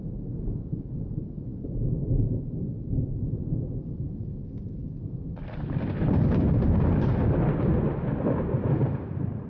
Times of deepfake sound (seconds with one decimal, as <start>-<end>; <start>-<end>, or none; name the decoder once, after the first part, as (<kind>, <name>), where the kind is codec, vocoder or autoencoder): none